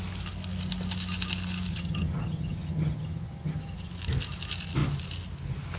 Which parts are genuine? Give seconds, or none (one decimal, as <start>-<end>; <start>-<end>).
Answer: 0.0-1.7; 3.9-5.8